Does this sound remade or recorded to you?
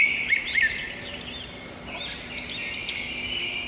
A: recorded